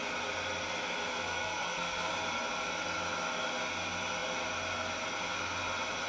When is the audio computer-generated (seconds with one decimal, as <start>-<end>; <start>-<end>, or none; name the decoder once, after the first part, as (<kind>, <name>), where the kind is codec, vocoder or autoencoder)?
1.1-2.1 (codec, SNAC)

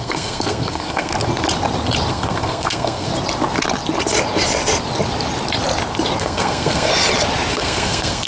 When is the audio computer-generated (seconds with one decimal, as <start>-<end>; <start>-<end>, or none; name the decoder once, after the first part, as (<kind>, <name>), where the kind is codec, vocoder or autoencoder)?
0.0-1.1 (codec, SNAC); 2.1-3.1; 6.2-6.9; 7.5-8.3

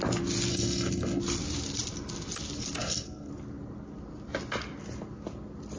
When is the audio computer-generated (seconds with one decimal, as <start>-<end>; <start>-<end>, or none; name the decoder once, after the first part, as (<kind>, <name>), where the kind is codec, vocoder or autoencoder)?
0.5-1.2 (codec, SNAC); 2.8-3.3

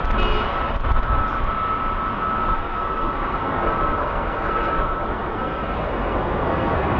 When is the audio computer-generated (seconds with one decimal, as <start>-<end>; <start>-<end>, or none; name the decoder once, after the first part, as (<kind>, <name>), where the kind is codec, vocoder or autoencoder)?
2.5-7.0 (codec, SNAC)

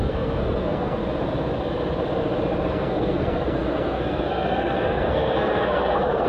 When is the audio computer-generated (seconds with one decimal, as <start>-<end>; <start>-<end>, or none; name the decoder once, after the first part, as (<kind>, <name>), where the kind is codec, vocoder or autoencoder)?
0.0-1.0 (codec, SNAC); 2.7-6.3

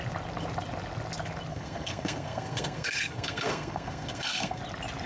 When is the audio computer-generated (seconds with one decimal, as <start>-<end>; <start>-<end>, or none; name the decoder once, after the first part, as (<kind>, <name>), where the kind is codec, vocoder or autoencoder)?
1.5-4.6 (codec, SNAC)

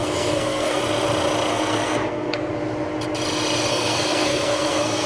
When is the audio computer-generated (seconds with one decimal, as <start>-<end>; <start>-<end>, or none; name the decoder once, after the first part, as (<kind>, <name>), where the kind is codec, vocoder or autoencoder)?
0.0-0.8 (codec, SNAC); 1.5-2.5; 3.7-5.1